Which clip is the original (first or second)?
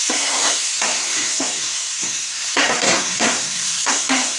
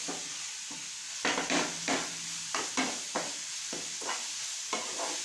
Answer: second